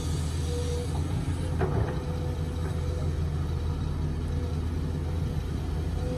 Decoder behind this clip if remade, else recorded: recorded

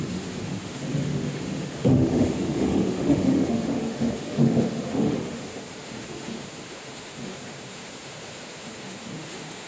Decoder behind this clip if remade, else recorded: remade, autoencoder, DAC-VAE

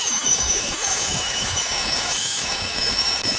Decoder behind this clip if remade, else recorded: remade, autoencoder, DAC-VAE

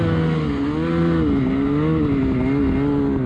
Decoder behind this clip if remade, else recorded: recorded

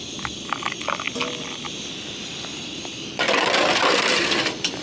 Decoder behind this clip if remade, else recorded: recorded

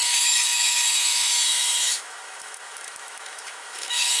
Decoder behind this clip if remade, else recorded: remade, autoencoder, DAC-VAE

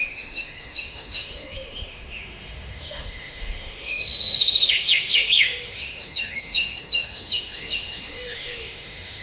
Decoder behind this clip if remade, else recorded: remade, autoencoder, DAC-VAE